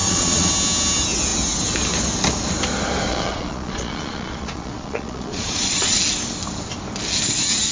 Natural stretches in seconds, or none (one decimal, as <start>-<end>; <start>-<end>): 0.5-3.1; 6.0-7.7